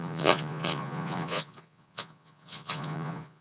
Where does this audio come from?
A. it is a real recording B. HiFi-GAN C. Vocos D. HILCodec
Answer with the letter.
C